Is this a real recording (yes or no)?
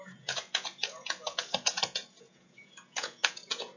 no